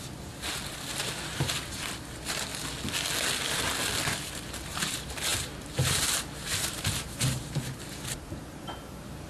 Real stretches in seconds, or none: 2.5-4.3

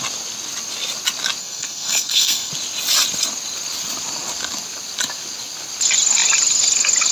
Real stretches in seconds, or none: 0.0-1.4; 2.5-7.1

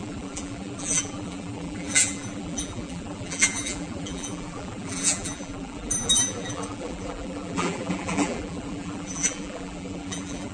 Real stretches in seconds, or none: none

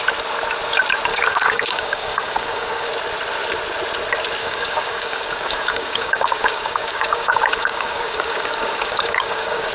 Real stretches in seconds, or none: 0.0-1.1; 2.9-4.4

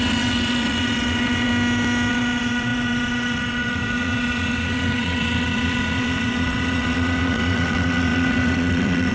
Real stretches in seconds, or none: 1.5-2.1

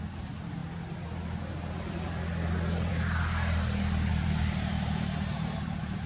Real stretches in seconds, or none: 0.0-4.1

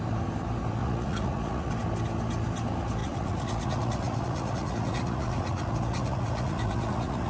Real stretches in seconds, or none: 0.0-0.8; 1.7-3.0